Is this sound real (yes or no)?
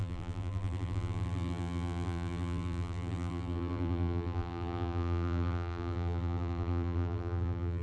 no